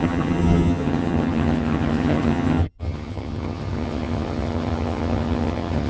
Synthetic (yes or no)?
yes